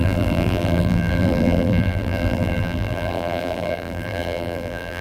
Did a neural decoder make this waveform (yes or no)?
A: yes